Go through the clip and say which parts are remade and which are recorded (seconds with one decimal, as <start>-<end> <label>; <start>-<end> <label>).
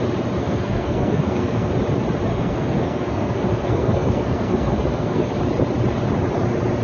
0.0-0.4 recorded; 0.4-1.7 remade; 1.7-2.3 recorded; 2.3-5.3 remade; 5.3-6.8 recorded